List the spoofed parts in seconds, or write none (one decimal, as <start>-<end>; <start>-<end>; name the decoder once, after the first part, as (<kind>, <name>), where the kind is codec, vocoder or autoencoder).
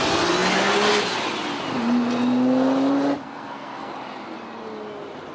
3.2-3.9 (codec, SNAC)